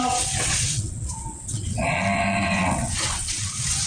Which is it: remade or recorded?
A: remade